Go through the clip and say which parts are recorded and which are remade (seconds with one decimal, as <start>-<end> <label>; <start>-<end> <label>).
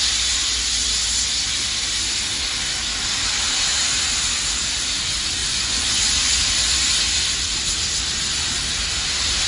0.0-5.4 recorded; 5.4-6.3 remade; 6.3-9.5 recorded